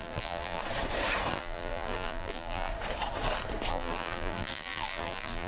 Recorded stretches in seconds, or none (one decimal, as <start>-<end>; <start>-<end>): 0.6-1.3; 2.7-3.7